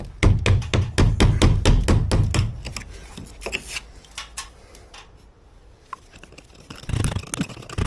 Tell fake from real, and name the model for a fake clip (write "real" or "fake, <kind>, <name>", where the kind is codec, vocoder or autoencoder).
real